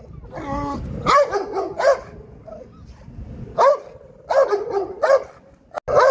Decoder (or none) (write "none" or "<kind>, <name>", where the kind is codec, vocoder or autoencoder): none